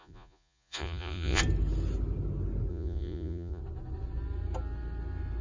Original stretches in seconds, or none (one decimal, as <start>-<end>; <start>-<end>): 1.4-2.7; 3.6-5.4